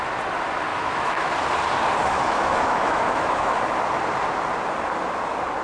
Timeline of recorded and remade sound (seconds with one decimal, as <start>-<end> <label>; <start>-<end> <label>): 0.0-0.7 recorded; 0.7-1.3 remade; 1.3-2.0 recorded; 2.0-3.6 remade; 3.6-5.6 recorded